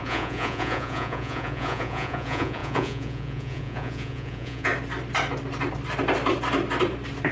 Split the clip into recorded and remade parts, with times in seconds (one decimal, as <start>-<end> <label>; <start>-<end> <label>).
0.0-4.7 remade; 4.7-7.3 recorded